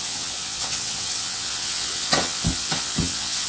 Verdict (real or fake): fake